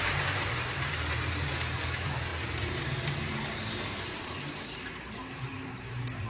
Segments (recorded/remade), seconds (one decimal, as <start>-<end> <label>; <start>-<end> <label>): 0.0-6.3 remade